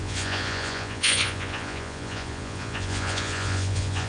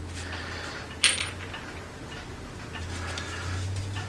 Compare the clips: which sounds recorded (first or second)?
second